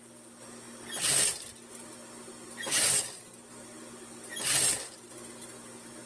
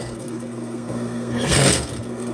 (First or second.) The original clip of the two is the first